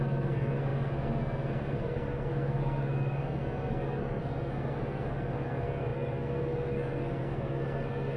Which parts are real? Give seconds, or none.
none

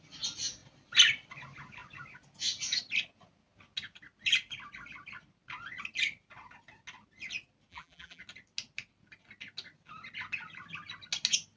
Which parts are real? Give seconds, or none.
0.0-7.7; 8.2-11.6

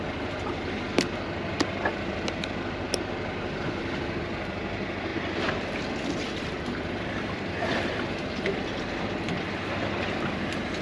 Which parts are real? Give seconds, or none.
0.0-5.1; 9.0-10.8

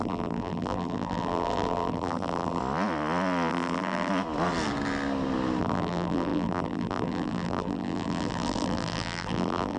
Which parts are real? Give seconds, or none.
2.6-3.5; 4.1-5.6

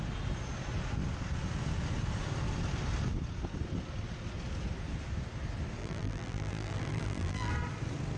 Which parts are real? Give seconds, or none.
0.0-5.8; 7.5-8.2